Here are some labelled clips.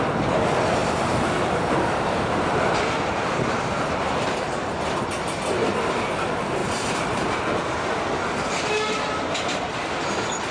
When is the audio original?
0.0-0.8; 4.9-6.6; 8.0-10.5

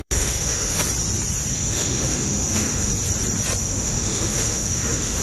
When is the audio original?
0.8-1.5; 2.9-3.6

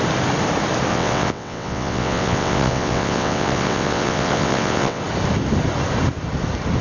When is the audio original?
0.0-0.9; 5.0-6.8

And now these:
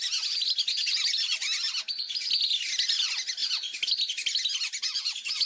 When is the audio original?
0.0-5.5